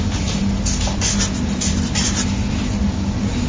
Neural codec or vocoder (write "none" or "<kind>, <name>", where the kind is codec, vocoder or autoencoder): none